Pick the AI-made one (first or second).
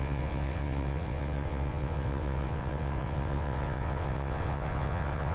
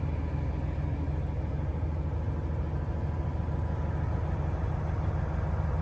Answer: first